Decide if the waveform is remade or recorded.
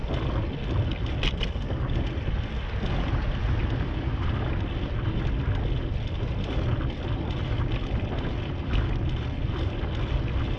recorded